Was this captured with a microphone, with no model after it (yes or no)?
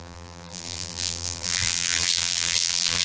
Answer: no